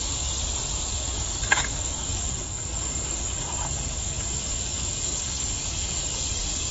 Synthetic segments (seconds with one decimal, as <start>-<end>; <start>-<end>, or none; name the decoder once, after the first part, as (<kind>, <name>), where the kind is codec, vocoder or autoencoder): 0.0-0.4 (codec, DAC); 0.9-6.7